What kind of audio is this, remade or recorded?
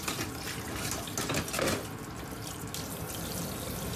recorded